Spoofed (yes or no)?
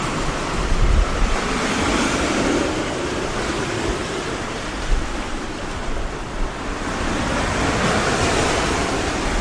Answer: no